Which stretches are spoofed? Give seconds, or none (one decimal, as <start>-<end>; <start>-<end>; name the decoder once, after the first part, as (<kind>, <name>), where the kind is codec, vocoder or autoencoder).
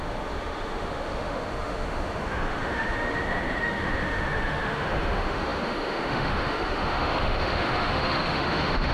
0.0-8.9 (autoencoder, DAC-VAE)